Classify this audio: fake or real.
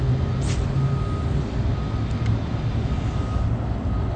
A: real